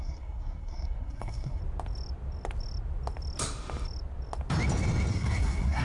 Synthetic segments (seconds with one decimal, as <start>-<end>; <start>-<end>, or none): 0.0-1.6; 5.1-5.8

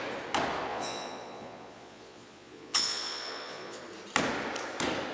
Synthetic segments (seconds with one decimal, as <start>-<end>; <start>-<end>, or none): 0.7-3.8

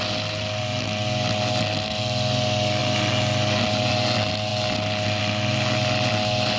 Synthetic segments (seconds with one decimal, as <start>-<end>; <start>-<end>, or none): none

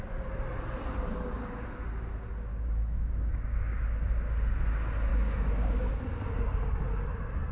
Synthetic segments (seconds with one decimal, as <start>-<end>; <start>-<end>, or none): 2.5-3.8; 5.1-6.0